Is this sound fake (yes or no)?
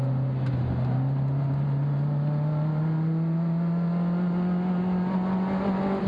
no